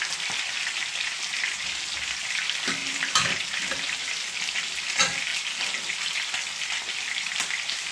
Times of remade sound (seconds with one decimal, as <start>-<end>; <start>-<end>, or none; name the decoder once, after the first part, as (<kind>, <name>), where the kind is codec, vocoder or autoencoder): none